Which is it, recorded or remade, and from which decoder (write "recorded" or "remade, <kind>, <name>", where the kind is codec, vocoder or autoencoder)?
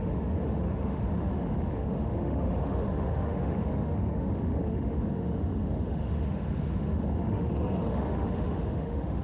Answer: remade, autoencoder, DAC-VAE